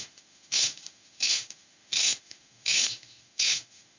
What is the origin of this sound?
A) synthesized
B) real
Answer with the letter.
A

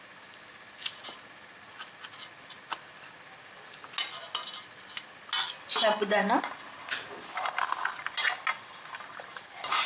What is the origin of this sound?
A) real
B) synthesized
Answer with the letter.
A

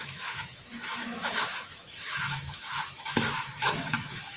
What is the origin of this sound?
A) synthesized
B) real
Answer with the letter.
A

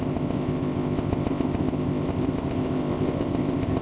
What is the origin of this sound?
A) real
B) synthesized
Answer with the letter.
B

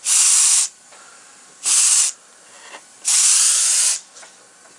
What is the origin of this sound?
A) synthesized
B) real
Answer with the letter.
B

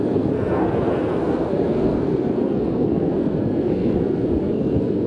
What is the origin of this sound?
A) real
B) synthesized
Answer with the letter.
B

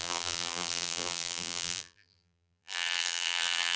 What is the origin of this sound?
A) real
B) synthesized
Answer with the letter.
B